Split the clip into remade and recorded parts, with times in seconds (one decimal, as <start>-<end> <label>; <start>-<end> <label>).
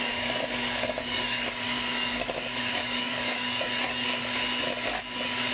0.0-4.2 remade; 4.2-5.5 recorded